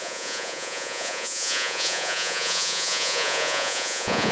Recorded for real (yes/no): no